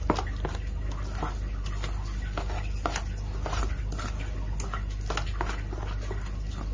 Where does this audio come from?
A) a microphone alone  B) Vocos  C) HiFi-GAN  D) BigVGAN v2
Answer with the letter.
A